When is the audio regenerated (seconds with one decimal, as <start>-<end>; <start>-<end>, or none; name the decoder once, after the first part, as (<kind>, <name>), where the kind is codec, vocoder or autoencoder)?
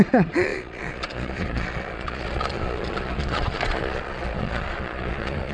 0.0-5.5 (vocoder, Vocos)